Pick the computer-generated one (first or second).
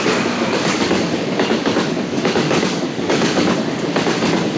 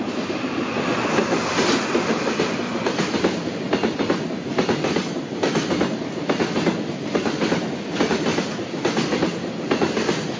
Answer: first